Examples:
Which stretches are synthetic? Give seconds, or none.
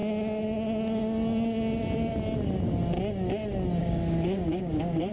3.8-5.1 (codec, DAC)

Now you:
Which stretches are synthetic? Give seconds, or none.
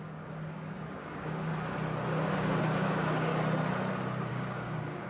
0.0-1.5 (codec, DAC); 2.3-3.3; 4.3-5.1